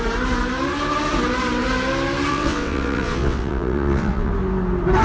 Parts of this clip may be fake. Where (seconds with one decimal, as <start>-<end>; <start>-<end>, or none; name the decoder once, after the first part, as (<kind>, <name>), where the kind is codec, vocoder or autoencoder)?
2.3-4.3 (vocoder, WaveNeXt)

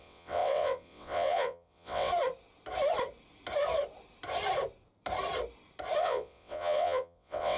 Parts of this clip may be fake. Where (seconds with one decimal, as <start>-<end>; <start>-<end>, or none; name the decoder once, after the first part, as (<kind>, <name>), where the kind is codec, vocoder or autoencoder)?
0.0-2.1 (vocoder, WaveNeXt); 6.0-7.6

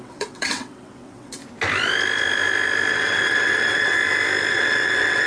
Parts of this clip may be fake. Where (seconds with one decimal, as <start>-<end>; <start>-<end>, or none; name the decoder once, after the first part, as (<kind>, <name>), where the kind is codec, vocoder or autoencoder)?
0.0-1.4 (vocoder, WaveNeXt); 2.9-4.0; 4.5-5.3